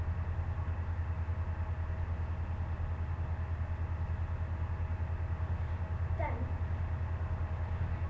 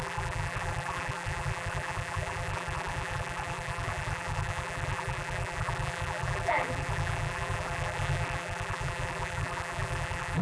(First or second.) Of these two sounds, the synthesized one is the second